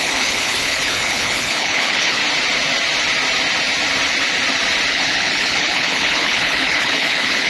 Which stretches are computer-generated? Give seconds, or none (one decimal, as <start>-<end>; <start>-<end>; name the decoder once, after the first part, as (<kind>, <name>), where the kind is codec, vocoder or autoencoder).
0.0-2.2 (codec, HILCodec); 4.9-7.5